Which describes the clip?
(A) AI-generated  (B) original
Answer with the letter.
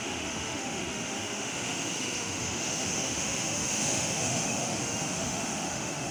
A